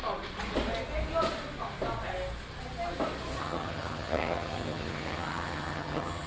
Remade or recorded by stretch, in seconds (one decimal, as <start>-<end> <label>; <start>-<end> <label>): 0.0-3.4 recorded; 3.4-6.3 remade